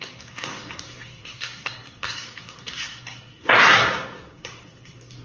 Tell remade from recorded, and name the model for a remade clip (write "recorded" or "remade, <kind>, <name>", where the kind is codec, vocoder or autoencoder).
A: remade, codec, SNAC